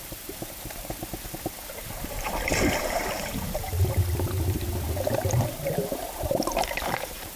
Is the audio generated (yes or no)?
yes